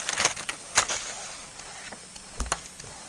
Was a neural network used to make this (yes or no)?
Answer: no